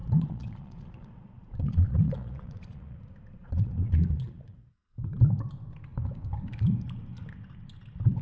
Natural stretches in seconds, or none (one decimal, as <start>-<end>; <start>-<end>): 3.0-3.4; 4.7-8.2